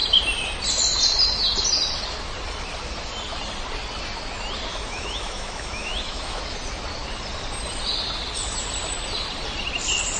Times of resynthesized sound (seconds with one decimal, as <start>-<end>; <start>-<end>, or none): 4.7-6.4